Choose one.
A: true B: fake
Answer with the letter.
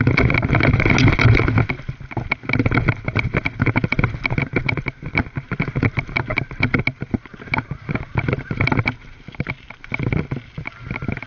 A